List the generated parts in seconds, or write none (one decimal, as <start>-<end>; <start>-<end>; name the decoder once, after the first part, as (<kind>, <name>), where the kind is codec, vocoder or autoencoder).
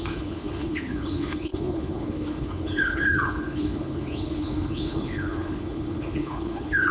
0.0-6.9 (codec, HILCodec)